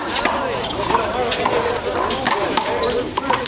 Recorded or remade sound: recorded